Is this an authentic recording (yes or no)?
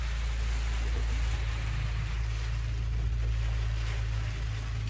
yes